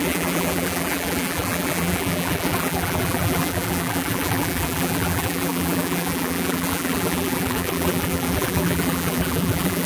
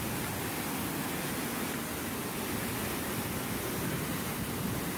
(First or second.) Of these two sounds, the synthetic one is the first